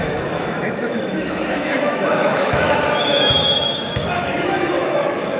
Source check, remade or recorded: remade